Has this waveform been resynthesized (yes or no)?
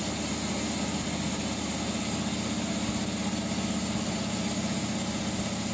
no